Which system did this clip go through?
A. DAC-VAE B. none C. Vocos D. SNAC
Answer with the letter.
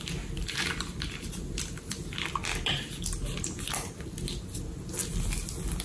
B